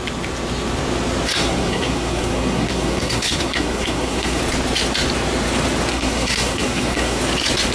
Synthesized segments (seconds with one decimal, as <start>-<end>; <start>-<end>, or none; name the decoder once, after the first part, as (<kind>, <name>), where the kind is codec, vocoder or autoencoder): 1.3-4.4 (codec, SNAC); 5.9-7.2